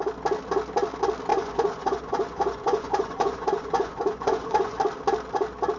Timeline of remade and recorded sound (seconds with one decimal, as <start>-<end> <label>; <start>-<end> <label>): 0.0-1.3 recorded; 1.3-4.8 remade; 4.8-5.8 recorded